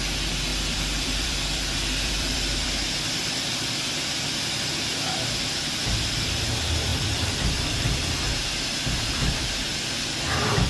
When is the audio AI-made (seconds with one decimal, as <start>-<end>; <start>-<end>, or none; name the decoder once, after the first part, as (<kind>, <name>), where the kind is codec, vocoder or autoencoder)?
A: 0.5-3.7 (vocoder, BigVGAN v2); 6.9-8.4